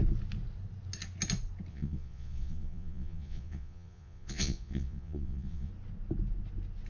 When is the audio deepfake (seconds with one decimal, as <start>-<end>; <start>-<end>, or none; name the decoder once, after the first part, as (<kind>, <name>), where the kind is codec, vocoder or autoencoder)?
1.7-5.7 (vocoder, Vocos)